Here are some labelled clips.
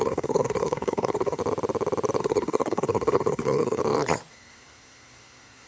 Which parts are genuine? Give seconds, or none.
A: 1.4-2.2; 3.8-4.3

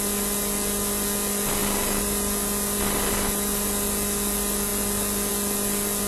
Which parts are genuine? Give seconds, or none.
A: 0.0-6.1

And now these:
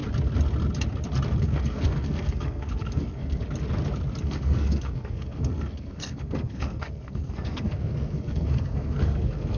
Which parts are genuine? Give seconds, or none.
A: 0.0-1.4; 3.4-4.2

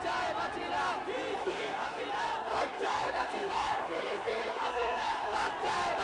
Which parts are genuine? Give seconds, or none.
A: 0.0-1.4; 2.0-2.4; 5.5-6.0